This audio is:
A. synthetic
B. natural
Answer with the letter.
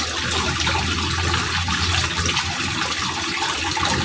B